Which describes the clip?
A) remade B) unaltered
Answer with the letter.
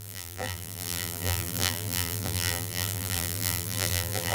A